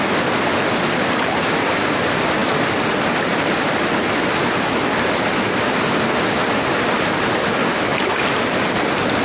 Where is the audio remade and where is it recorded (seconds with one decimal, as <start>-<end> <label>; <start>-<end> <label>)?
0.0-9.2 recorded